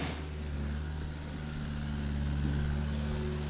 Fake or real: real